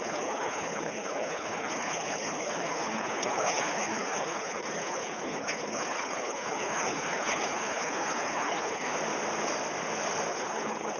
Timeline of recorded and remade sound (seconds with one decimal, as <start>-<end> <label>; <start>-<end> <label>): 0.0-8.9 remade; 8.9-10.3 recorded; 10.3-11.0 remade